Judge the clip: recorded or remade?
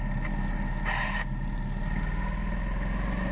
recorded